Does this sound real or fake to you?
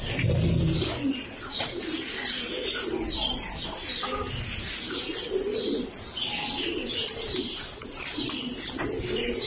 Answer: real